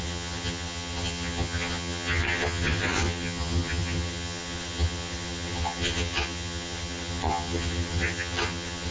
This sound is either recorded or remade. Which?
remade